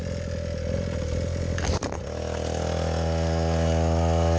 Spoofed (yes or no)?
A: no